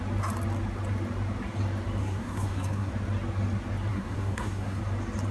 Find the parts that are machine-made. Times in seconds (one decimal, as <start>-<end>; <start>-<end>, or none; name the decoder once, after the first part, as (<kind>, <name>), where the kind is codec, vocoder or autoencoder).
2.0-2.9 (codec, SNAC); 3.9-4.8